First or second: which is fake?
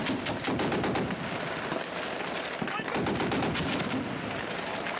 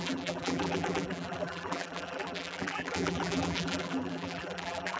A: second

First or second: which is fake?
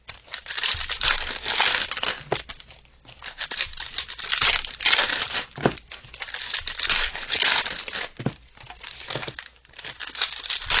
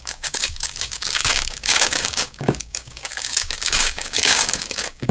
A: second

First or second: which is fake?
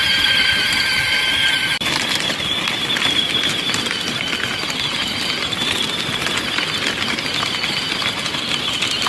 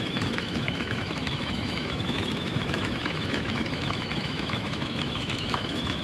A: second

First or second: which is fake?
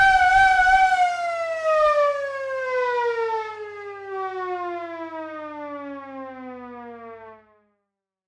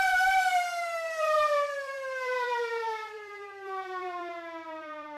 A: second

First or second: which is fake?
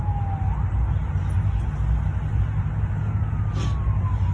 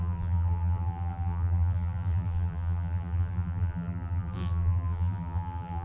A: second